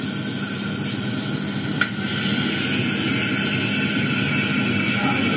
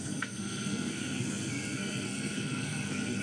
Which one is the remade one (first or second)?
second